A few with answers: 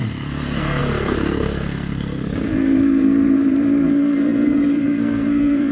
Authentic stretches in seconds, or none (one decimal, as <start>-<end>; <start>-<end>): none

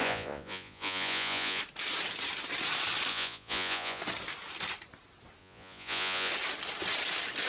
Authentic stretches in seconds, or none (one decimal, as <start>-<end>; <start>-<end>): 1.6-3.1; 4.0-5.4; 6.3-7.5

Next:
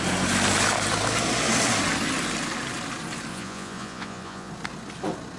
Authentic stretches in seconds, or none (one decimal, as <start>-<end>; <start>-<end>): 0.0-3.3; 4.5-5.4

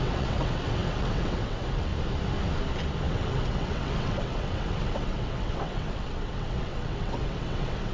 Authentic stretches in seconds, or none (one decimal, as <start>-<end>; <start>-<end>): 1.9-3.1

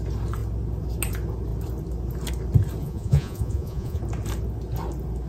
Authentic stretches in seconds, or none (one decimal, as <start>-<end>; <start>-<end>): 0.0-2.8; 4.0-5.3

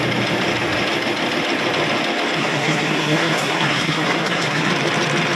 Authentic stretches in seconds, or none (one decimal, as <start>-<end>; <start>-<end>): 0.0-2.4; 4.7-5.4

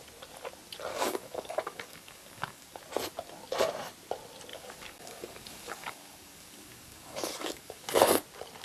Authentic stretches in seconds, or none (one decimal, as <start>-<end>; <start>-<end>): 0.0-0.9; 2.8-4.5; 8.0-8.6

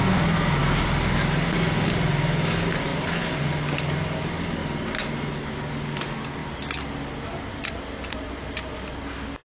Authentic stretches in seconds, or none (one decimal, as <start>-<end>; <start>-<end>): 0.0-9.5